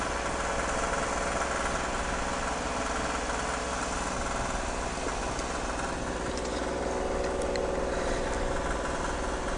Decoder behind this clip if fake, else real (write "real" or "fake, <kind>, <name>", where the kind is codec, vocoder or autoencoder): real